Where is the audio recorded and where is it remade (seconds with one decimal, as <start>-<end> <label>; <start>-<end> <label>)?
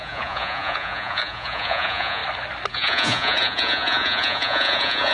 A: 0.0-2.2 remade; 2.2-2.7 recorded; 2.7-5.1 remade